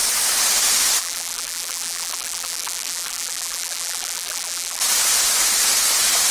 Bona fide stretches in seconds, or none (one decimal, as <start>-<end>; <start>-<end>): 0.0-1.0; 4.8-6.3